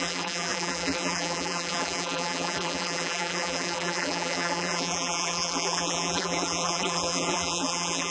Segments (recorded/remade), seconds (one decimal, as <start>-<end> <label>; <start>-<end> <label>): 0.0-8.1 remade